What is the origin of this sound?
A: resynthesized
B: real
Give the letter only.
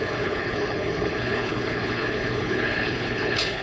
A